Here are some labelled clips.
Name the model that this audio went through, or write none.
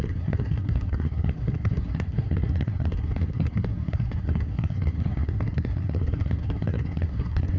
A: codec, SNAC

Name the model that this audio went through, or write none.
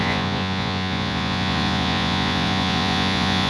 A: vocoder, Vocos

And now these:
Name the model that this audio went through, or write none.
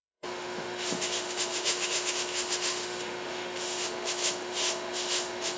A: autoencoder, DAC-VAE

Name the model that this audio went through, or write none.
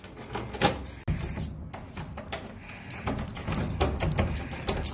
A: none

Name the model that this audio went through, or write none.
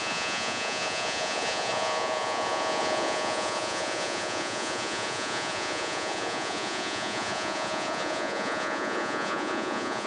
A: vocoder, Vocos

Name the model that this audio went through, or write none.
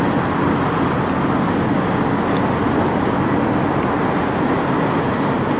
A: none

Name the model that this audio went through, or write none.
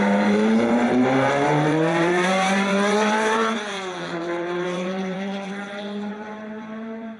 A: vocoder, BigVGAN v2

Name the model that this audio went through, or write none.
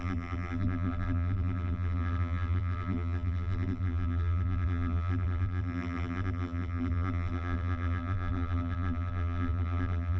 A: vocoder, BigVGAN v2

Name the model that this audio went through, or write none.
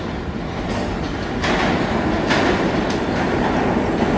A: none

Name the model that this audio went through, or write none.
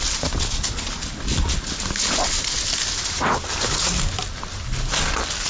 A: none